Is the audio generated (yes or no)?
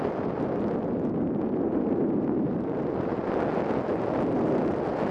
no